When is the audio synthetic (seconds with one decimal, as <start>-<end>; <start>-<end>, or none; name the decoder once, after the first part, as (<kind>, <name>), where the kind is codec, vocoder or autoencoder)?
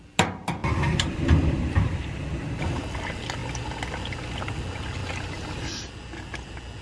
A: 0.6-2.7 (vocoder, BigVGAN v2); 5.0-5.6